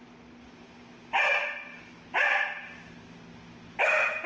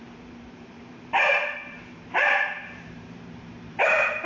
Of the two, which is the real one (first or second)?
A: first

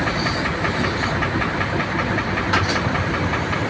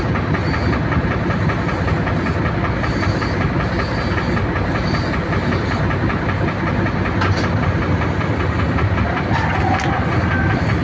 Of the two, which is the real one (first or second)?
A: second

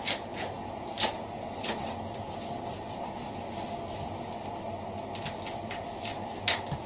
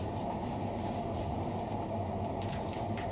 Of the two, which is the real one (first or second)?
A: first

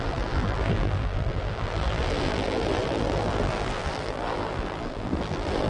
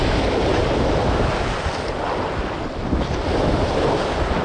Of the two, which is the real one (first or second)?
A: second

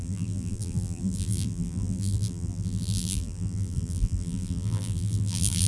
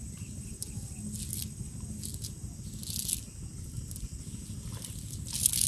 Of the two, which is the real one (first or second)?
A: second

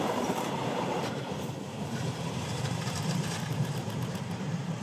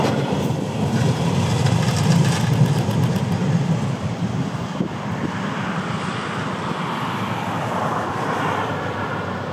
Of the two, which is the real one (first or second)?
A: second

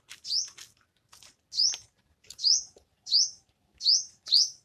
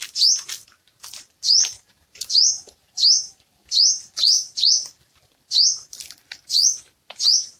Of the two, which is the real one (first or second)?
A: first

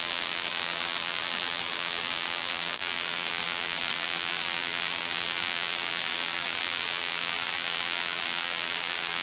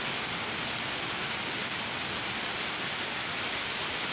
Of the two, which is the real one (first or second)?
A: second